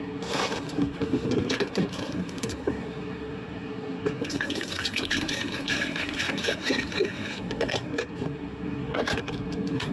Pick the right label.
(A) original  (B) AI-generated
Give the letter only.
B